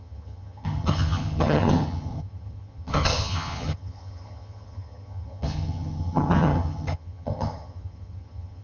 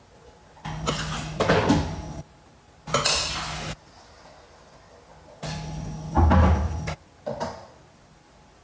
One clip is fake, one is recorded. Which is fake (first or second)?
first